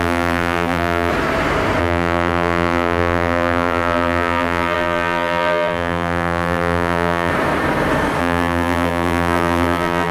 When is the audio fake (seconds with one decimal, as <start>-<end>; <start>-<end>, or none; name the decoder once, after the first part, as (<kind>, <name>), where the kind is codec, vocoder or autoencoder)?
0.0-1.1 (vocoder, BigVGAN v2); 1.8-7.3; 8.2-10.1